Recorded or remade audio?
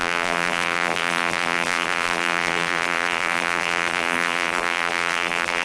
remade